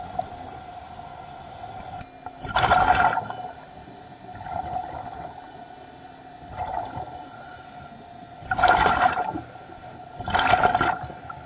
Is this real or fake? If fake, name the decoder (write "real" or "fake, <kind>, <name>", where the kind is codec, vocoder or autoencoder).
real